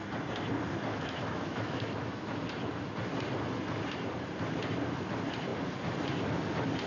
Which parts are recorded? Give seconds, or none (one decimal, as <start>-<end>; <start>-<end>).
0.0-0.9; 2.4-6.9